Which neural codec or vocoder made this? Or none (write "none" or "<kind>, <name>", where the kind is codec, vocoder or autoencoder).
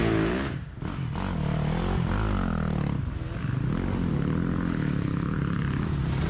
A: none